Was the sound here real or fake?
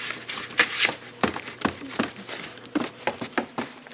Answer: real